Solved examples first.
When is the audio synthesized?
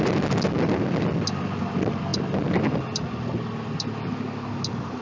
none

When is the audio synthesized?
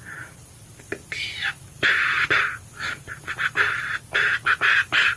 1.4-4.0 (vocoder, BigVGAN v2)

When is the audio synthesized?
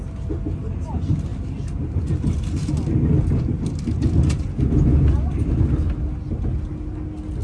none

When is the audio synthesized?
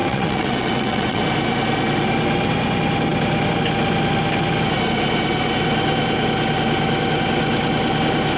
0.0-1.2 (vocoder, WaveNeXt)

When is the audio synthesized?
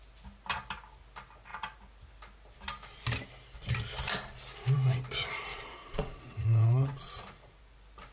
5.8-7.6 (vocoder, Vocos)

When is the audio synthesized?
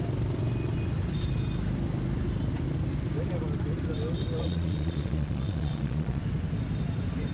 4.4-6.2 (vocoder, Vocos)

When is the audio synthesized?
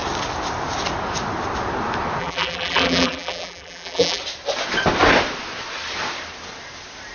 2.2-4.2 (vocoder, BigVGAN v2)